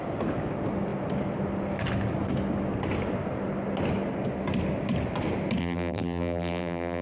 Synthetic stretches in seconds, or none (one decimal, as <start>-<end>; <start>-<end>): 5.6-7.0